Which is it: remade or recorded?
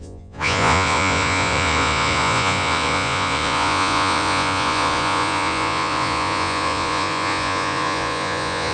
remade